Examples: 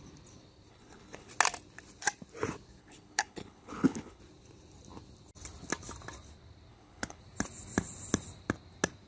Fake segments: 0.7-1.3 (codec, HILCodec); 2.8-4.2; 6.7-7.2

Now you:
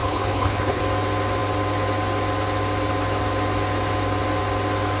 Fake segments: 0.0-0.8 (codec, HILCodec)

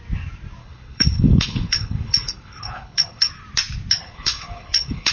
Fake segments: 0.6-3.3 (codec, HILCodec); 4.0-5.1

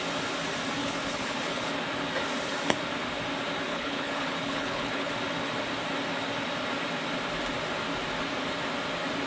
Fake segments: 0.8-1.7 (codec, HILCodec); 3.7-5.1

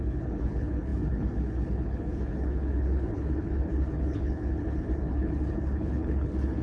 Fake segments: 0.0-6.6 (codec, HILCodec)

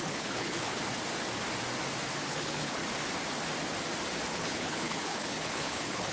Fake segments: 0.0-0.8 (codec, HILCodec); 2.3-2.8; 4.3-6.1

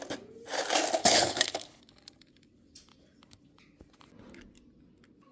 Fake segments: 1.0-1.8 (codec, HILCodec)

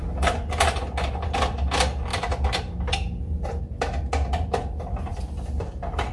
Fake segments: none